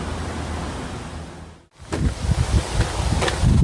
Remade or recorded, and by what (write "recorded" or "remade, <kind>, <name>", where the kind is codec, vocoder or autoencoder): recorded